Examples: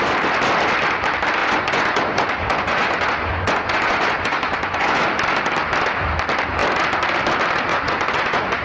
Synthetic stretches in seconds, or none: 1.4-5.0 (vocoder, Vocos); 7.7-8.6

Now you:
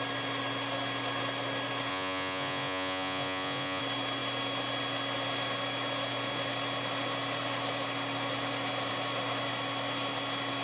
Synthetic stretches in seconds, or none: 1.9-3.8 (vocoder, Vocos)